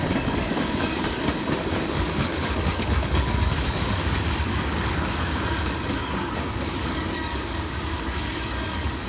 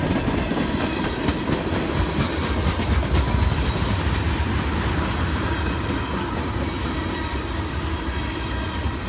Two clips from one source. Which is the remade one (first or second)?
first